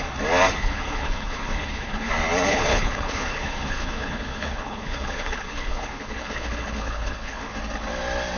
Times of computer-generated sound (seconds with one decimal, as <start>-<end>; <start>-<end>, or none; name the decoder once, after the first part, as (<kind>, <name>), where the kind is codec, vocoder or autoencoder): 0.6-2.1 (codec, HILCodec); 2.5-7.5